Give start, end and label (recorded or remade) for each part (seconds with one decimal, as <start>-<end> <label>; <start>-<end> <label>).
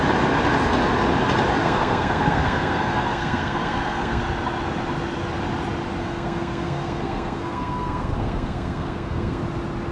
0.0-1.6 recorded; 1.6-4.2 remade; 4.2-6.0 recorded; 6.0-9.4 remade; 9.4-9.9 recorded